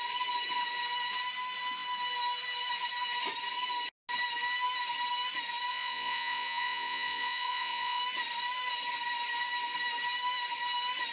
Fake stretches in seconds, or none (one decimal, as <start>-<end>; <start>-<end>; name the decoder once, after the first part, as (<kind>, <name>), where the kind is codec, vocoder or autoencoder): 5.7-8.0 (vocoder, Vocos)